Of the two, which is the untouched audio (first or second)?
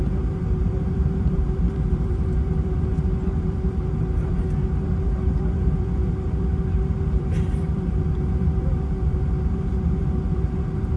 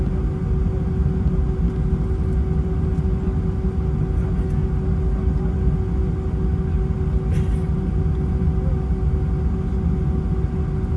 second